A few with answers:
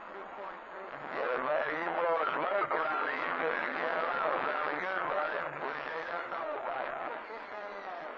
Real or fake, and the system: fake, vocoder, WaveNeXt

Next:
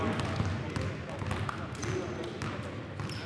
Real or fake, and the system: real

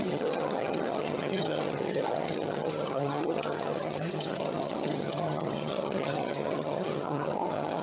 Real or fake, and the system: fake, vocoder, HiFi-GAN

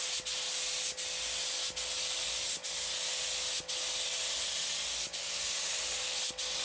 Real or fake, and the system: real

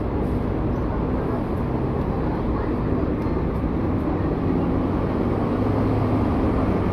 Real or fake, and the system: real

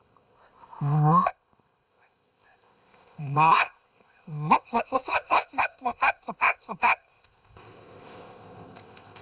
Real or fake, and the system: fake, codec, ZipCodec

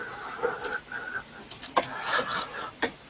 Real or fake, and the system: real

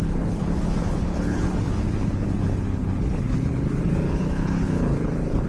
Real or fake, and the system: fake, codec, HILCodec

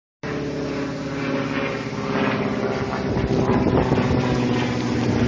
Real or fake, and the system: real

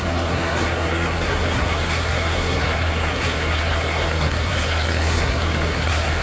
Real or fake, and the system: fake, codec, SNAC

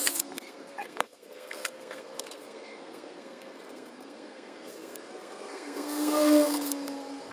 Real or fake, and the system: fake, codec, SNAC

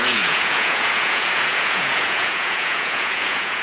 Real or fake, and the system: fake, vocoder, Vocos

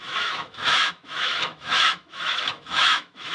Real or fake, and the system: fake, autoencoder, DAC-VAE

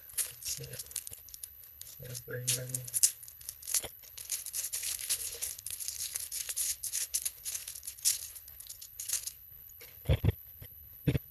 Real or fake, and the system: fake, codec, HILCodec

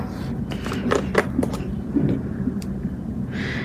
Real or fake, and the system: real